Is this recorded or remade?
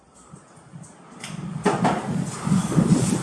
recorded